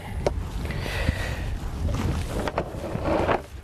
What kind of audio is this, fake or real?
real